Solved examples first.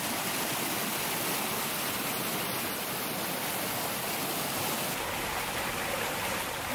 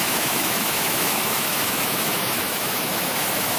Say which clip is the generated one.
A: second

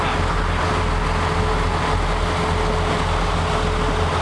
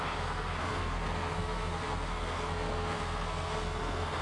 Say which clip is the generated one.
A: second